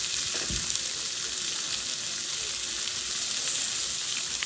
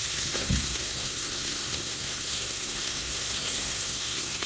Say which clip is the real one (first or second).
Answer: first